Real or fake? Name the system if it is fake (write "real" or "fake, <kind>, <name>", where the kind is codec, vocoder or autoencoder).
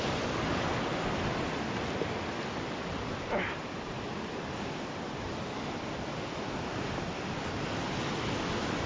real